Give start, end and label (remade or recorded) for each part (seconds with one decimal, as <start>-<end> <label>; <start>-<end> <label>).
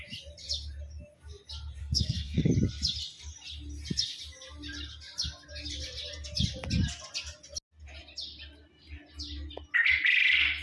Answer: 0.0-1.8 recorded; 1.8-2.5 remade; 2.5-10.6 recorded